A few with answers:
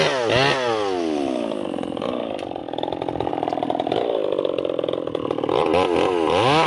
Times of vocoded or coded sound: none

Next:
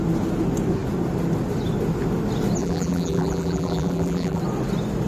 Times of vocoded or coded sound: 2.6-4.4 (vocoder, BigVGAN v2)

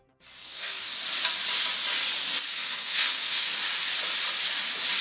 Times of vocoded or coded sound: 0.4-0.9 (codec, SNAC); 2.5-3.5